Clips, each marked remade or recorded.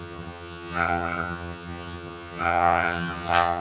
remade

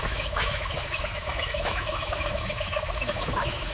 remade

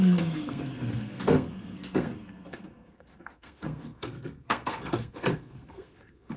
remade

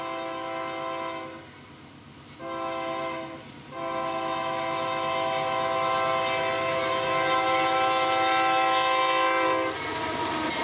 recorded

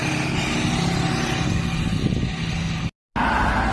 recorded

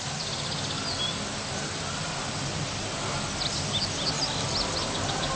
recorded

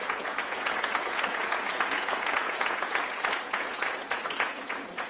remade